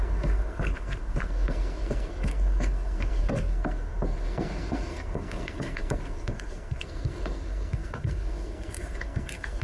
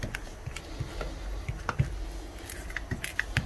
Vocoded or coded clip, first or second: first